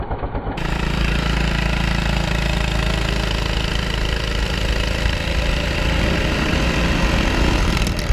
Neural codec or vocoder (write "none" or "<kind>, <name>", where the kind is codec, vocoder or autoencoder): none